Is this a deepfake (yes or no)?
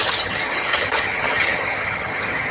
yes